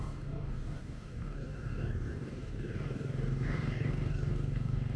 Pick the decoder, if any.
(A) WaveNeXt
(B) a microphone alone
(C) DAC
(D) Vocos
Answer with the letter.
C